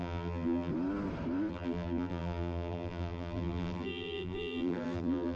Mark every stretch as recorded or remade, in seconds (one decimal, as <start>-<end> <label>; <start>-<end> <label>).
0.0-0.7 remade; 0.7-1.5 recorded; 1.5-5.4 remade